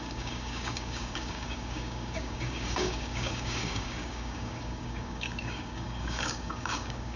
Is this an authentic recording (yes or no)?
no